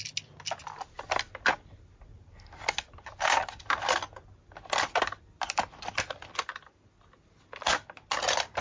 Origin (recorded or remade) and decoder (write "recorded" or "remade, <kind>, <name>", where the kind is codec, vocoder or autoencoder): recorded